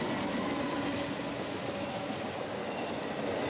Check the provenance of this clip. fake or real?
real